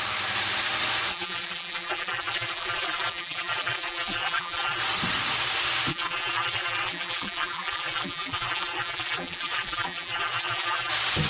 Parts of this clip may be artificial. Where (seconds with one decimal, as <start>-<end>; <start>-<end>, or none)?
1.1-4.8; 5.9-10.9